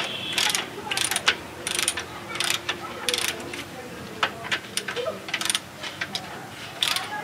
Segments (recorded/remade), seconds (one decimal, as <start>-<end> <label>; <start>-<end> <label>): 0.0-7.2 remade